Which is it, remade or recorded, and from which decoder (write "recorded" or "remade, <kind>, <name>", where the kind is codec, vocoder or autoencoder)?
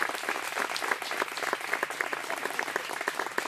recorded